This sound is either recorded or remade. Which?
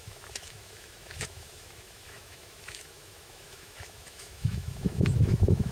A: remade